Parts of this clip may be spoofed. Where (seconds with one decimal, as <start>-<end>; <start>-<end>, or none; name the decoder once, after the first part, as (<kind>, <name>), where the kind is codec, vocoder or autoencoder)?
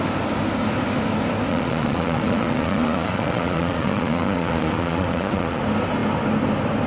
1.5-5.6 (vocoder, Vocos)